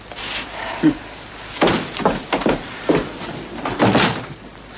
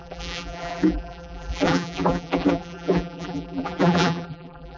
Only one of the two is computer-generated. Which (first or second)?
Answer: second